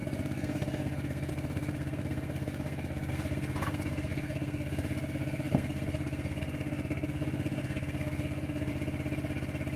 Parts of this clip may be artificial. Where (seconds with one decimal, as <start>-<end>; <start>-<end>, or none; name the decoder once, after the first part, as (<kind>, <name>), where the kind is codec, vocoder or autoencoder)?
0.0-8.7 (codec, SNAC)